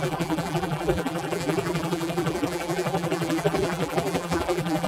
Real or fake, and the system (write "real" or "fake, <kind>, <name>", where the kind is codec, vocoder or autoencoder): fake, vocoder, BigVGAN v2